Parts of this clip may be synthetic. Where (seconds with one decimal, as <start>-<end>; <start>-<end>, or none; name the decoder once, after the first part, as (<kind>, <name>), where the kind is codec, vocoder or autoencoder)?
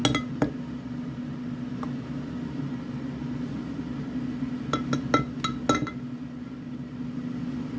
none